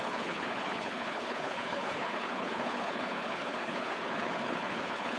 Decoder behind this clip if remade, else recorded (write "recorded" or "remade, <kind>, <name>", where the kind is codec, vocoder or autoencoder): remade, codec, HILCodec